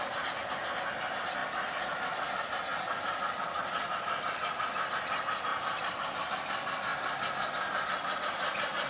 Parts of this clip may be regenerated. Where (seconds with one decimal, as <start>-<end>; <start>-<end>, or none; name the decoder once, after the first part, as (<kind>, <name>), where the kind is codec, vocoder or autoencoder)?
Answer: 2.7-3.6 (vocoder, BigVGAN v2); 5.5-6.3